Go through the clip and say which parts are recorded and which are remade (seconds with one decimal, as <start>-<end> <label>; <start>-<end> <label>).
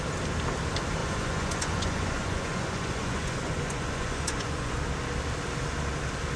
0.0-1.0 recorded; 1.0-4.8 remade; 4.8-6.4 recorded